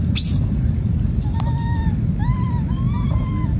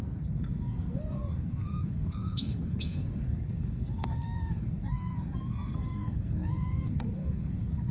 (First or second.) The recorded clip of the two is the first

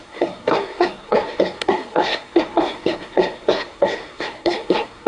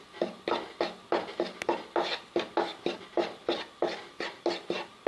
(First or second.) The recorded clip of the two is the second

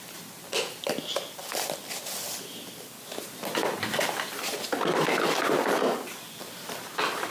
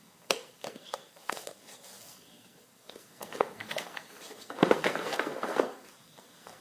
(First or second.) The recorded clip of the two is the first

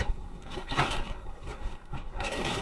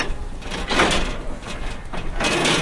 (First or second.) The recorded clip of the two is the second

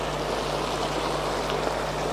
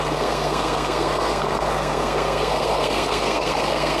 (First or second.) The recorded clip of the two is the first